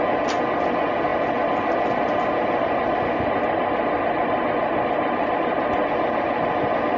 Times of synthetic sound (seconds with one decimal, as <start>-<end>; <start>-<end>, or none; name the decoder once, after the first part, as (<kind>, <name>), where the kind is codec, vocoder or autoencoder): none